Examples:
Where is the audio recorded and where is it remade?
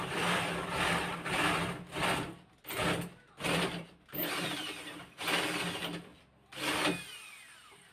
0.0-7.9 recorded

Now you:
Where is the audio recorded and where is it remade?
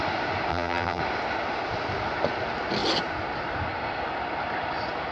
0.0-0.5 recorded; 0.5-1.0 remade; 1.0-5.1 recorded